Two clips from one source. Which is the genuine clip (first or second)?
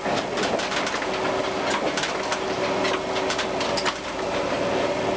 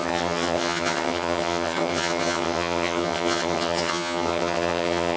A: first